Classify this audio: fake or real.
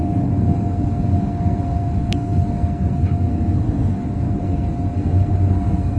fake